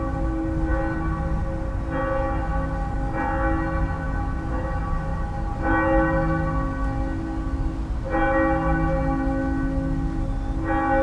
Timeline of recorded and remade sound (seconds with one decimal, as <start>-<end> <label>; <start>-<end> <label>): 0.0-11.0 recorded